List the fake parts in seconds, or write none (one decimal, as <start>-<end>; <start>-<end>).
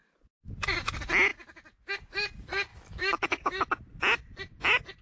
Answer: 2.7-3.7